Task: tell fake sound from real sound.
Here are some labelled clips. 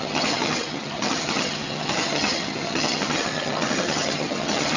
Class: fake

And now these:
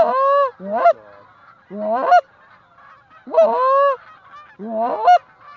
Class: real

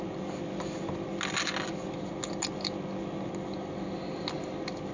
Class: real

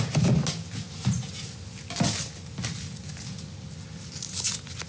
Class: real